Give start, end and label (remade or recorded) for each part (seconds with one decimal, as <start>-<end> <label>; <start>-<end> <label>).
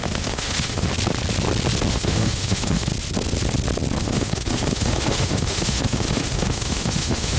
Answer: 0.0-0.9 remade; 0.9-1.9 recorded; 1.9-2.9 remade; 2.9-4.0 recorded; 4.0-7.4 remade